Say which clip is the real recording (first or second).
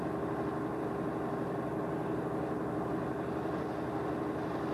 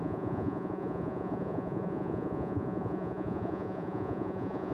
first